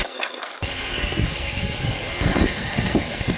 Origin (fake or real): fake